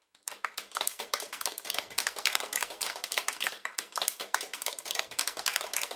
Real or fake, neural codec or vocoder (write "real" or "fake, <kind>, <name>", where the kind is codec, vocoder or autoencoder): fake, codec, SNAC